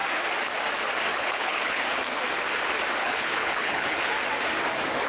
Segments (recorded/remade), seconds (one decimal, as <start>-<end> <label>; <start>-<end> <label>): 0.0-1.1 recorded; 1.1-1.8 remade; 1.8-3.0 recorded; 3.0-4.1 remade; 4.1-5.1 recorded